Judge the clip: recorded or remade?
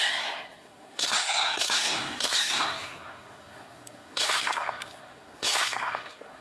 remade